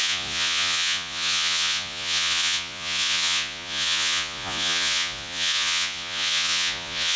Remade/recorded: remade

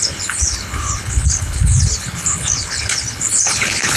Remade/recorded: remade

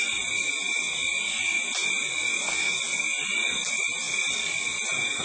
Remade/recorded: recorded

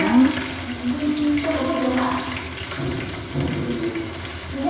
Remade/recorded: recorded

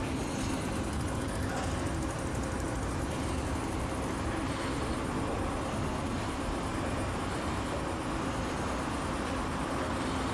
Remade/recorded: recorded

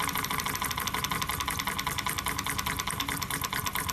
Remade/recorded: recorded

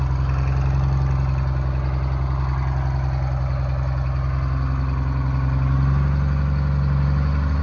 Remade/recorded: recorded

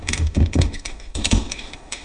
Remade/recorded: remade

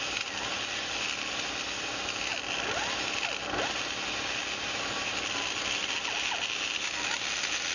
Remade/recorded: recorded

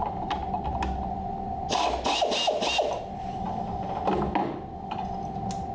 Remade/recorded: recorded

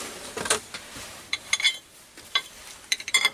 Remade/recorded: remade